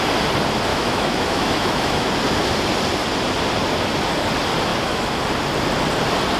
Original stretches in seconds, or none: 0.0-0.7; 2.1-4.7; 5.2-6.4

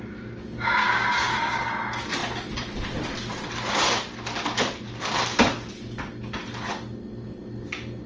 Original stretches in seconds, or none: 0.0-0.8; 1.6-8.1

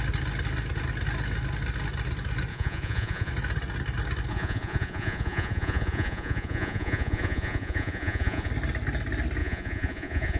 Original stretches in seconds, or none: 0.0-2.5; 3.3-4.3; 8.5-9.4

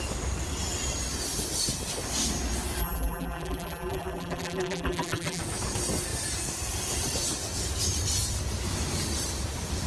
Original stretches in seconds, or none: 0.0-2.8; 5.4-9.9

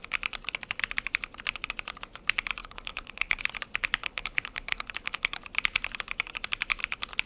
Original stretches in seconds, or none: 0.0-2.6; 3.4-4.0; 5.4-7.3

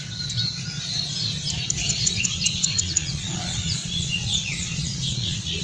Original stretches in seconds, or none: 0.0-1.8

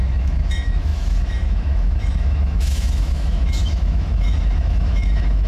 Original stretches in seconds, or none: none